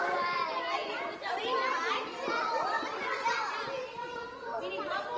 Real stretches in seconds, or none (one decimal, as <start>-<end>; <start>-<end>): 0.0-4.0; 4.6-5.2